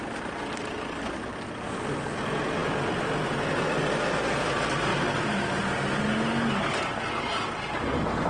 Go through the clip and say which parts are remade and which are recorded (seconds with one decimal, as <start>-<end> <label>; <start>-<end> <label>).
0.0-8.3 recorded